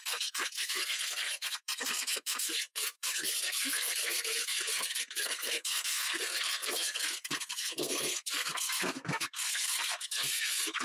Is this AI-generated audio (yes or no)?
yes